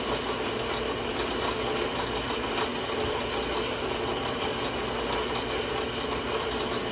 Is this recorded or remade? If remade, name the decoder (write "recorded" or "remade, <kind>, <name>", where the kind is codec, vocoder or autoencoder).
recorded